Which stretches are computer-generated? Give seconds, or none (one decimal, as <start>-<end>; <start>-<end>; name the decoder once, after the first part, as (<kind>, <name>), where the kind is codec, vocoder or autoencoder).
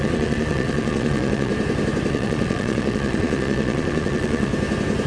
0.0-1.5 (vocoder, Vocos); 2.1-4.5